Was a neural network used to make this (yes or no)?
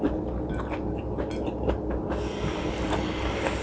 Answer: no